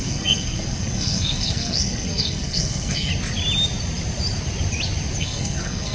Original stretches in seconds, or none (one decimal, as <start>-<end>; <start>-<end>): 3.1-5.2